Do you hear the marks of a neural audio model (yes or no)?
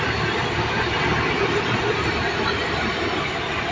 no